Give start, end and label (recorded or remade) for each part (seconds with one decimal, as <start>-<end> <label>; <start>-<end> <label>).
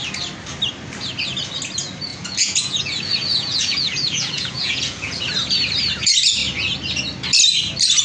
0.0-2.1 recorded; 2.1-5.2 remade; 5.2-8.0 recorded